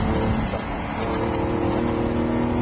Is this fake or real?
real